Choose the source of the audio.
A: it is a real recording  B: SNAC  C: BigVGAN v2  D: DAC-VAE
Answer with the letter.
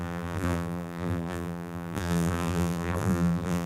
C